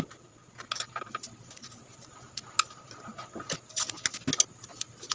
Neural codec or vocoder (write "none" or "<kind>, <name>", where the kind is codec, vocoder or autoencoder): none